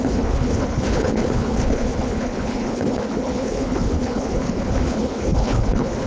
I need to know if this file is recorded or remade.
remade